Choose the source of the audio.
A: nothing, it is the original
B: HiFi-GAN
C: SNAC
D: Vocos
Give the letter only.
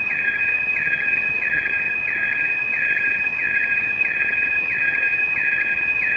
B